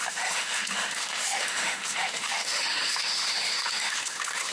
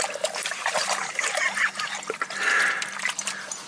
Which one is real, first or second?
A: second